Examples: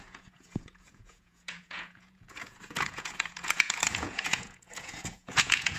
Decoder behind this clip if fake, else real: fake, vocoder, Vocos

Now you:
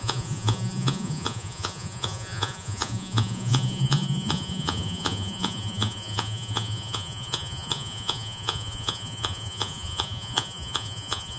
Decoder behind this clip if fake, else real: fake, vocoder, Vocos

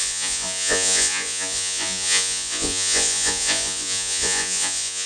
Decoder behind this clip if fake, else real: fake, vocoder, Vocos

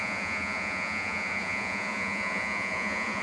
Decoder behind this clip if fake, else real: fake, vocoder, Vocos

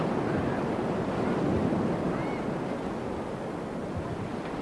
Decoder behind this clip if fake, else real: real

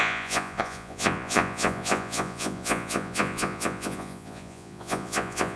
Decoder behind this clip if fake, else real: fake, vocoder, Vocos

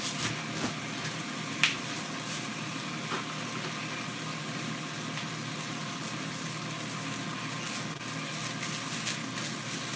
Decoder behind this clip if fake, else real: real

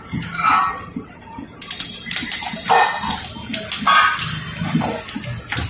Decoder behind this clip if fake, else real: real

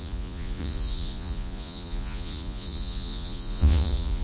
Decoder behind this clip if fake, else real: fake, vocoder, Vocos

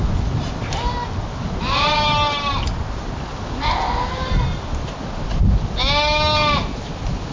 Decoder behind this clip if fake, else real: real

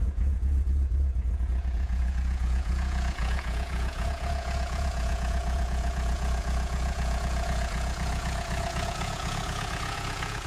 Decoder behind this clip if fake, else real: fake, vocoder, Vocos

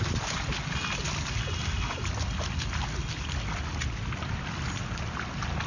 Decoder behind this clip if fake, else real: real